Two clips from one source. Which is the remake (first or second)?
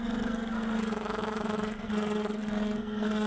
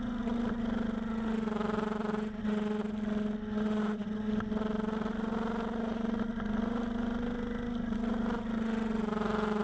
first